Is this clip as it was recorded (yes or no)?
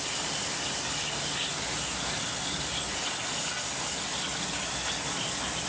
yes